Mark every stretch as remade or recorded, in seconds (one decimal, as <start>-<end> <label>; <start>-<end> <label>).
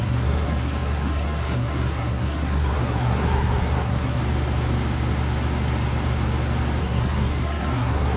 0.0-4.2 remade; 4.2-6.8 recorded; 6.8-8.2 remade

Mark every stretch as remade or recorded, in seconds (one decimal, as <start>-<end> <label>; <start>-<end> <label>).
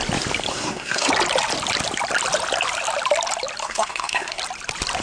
0.0-0.5 recorded; 0.5-1.1 remade; 1.1-3.6 recorded; 3.6-4.4 remade; 4.4-5.0 recorded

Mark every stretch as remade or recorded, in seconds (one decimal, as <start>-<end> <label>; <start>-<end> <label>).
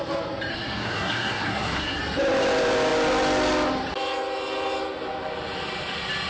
0.0-0.5 recorded; 0.5-2.0 remade; 2.0-6.3 recorded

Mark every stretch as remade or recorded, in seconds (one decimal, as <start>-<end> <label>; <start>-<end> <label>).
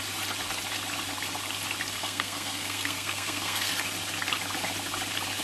0.0-2.0 recorded; 2.0-3.7 remade; 3.7-5.4 recorded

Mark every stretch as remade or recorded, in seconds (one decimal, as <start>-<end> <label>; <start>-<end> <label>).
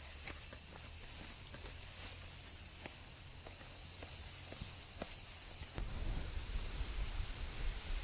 0.0-8.0 recorded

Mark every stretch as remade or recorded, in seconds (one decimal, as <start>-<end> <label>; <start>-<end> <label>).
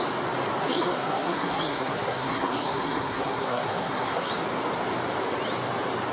0.0-0.6 recorded; 0.6-4.3 remade; 4.3-6.1 recorded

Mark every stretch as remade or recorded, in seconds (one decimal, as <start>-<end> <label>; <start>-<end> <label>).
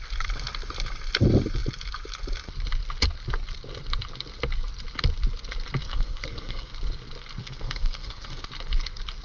0.0-5.8 recorded; 5.8-6.7 remade; 6.7-7.4 recorded; 7.4-8.5 remade; 8.5-9.2 recorded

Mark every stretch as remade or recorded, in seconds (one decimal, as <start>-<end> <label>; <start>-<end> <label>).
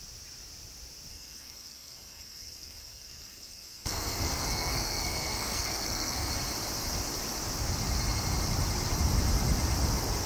0.0-1.1 recorded; 1.1-6.3 remade; 6.3-10.3 recorded